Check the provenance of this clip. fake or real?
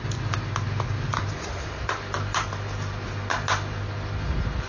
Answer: real